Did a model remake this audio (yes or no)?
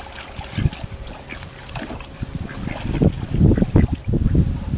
no